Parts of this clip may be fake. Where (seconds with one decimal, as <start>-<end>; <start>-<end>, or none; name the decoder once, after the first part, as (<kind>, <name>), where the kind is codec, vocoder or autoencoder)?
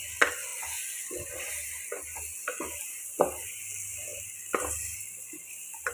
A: 4.1-5.9 (vocoder, BigVGAN v2)